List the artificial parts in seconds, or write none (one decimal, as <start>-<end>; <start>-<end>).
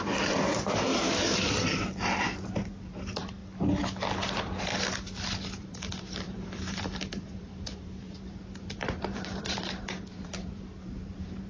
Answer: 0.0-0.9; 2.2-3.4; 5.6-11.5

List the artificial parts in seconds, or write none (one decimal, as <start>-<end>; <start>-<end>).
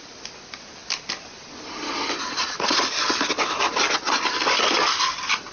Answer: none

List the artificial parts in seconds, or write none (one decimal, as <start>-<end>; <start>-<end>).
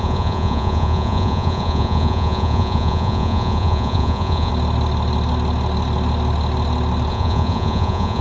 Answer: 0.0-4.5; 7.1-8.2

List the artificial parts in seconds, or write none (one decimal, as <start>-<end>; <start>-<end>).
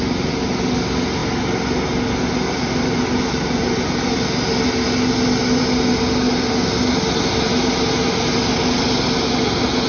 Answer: none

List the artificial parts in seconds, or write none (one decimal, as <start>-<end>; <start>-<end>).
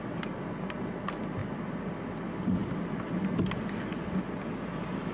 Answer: 1.4-2.1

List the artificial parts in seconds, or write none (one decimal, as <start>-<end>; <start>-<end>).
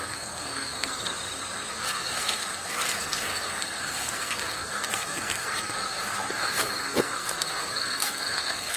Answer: 0.0-1.1; 1.7-8.8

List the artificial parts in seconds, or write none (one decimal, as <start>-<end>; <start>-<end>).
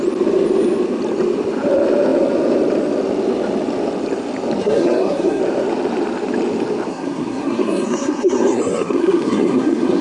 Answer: 4.6-5.4; 6.9-10.0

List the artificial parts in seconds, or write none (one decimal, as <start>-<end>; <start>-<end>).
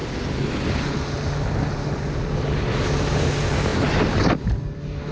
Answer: none